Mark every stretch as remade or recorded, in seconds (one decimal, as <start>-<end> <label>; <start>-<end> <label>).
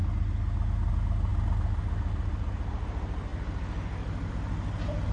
0.0-5.1 recorded